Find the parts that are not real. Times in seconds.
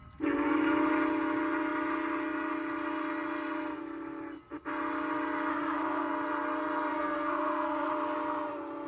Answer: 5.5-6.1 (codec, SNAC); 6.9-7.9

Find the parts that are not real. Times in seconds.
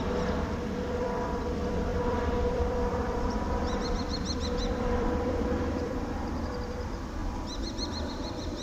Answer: 0.0-7.2 (vocoder, BigVGAN v2); 8.1-8.6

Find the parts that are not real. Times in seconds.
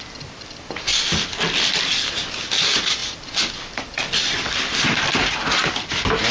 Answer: 0.9-2.3 (vocoder, BigVGAN v2); 3.0-5.3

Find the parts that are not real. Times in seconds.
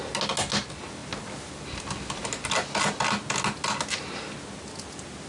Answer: none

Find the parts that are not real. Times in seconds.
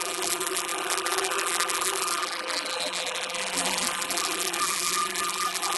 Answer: 0.0-5.8 (vocoder, BigVGAN v2)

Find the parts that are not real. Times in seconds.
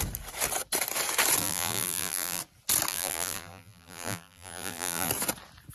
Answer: 1.4-2.4 (vocoder, BigVGAN v2); 2.9-5.1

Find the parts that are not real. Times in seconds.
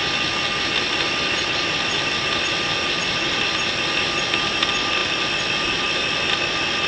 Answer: none